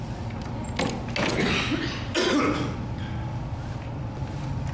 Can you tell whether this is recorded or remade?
recorded